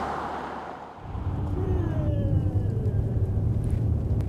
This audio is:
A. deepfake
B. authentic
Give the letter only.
A